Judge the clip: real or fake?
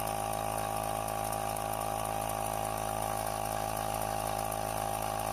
real